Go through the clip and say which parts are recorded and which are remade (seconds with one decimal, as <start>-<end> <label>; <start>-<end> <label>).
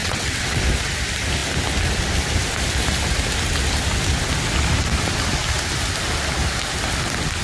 0.0-0.6 remade; 0.6-7.4 recorded